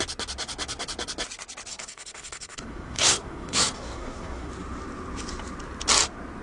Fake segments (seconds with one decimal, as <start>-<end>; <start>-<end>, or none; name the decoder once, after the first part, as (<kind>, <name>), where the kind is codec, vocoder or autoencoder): 1.7-4.5 (codec, SNAC)